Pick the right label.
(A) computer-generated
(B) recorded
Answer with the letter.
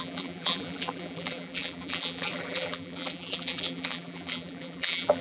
A